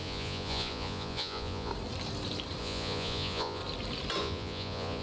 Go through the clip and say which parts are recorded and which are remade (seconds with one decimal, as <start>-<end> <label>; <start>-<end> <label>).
0.0-1.7 remade; 1.7-2.6 recorded; 2.6-3.6 remade; 3.6-4.2 recorded; 4.2-5.0 remade